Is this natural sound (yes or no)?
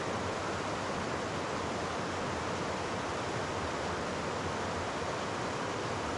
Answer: yes